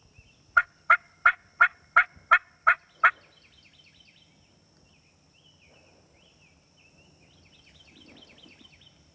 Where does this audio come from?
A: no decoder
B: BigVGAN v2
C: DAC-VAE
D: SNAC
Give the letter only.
A